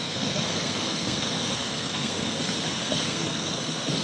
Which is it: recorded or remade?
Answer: remade